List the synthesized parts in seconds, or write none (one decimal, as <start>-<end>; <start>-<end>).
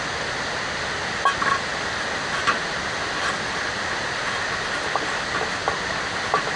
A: none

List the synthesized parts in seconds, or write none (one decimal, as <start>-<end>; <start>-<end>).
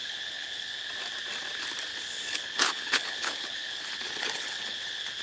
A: 0.0-0.9; 1.9-5.2